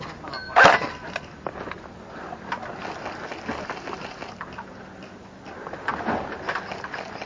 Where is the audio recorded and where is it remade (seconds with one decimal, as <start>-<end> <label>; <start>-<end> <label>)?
0.0-7.3 recorded